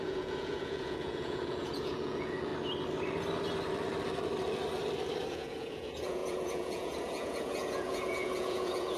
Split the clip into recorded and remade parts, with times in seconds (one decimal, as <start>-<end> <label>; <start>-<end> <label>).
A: 0.0-2.5 remade; 2.5-5.3 recorded; 5.3-9.0 remade